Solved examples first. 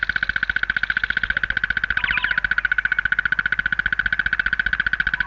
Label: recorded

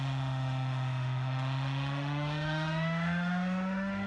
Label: remade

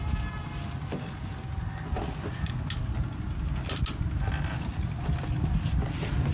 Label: recorded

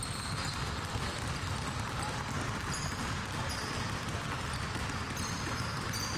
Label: recorded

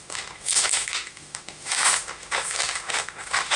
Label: remade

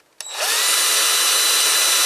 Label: recorded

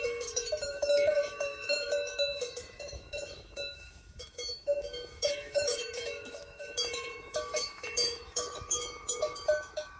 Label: remade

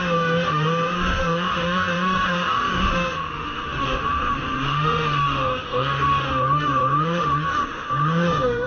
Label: remade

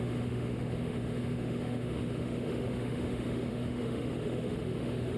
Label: remade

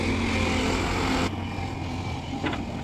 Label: recorded